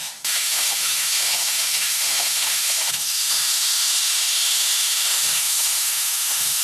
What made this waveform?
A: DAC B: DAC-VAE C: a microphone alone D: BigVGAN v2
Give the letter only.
B